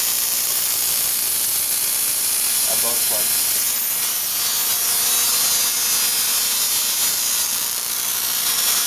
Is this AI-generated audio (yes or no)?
no